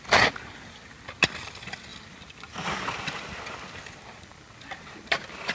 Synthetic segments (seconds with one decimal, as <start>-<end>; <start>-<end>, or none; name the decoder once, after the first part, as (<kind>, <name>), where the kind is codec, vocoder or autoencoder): none